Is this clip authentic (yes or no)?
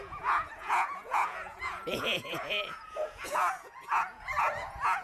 no